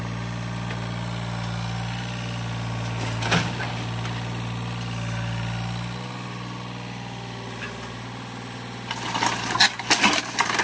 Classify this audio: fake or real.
real